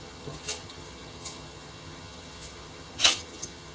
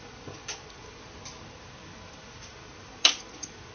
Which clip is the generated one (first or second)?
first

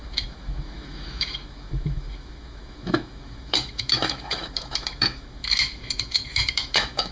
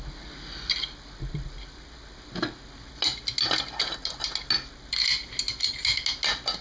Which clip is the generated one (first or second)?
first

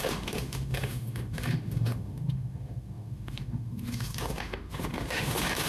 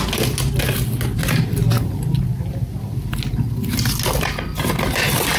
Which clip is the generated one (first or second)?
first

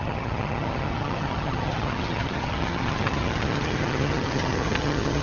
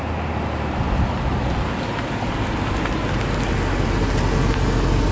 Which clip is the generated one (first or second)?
first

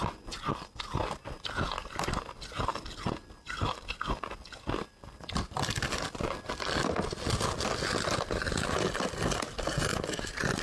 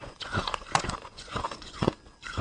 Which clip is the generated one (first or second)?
second